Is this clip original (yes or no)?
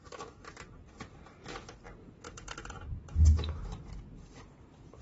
no